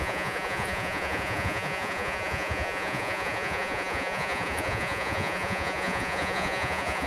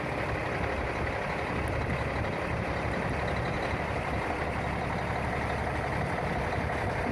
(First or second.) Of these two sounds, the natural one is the second